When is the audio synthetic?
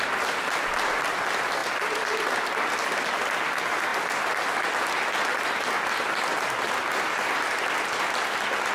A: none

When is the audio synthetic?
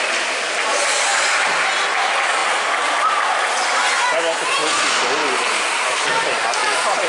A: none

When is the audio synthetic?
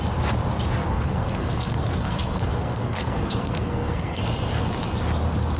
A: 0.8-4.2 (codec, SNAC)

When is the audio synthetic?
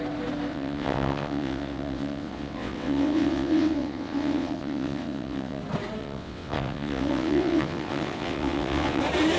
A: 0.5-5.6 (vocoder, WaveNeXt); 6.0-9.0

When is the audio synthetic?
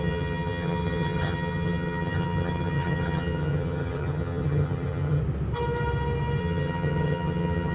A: 0.0-5.2 (vocoder, HiFi-GAN); 6.4-7.7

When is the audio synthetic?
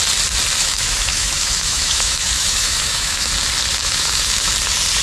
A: 0.6-3.3 (autoencoder, DAC-VAE); 3.7-4.5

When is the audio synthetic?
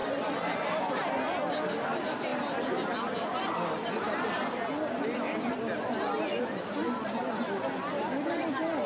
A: none